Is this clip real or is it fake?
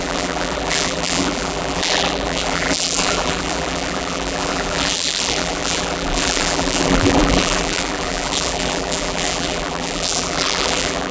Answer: fake